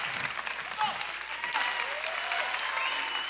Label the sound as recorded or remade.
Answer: recorded